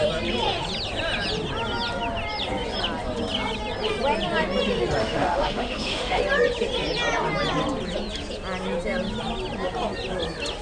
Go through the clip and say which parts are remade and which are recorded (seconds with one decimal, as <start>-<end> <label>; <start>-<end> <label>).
0.0-5.0 recorded; 5.0-6.2 remade; 6.2-10.6 recorded